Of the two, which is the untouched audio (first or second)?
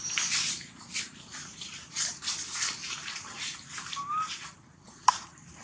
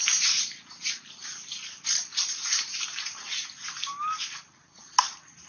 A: second